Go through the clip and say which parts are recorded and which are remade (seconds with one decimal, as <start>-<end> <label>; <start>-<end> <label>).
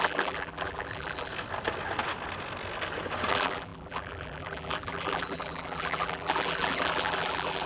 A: 0.0-1.3 remade; 1.3-3.3 recorded; 3.3-7.7 remade